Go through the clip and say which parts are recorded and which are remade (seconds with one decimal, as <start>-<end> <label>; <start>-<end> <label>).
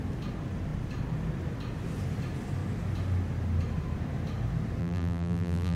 0.0-4.8 recorded; 4.8-5.8 remade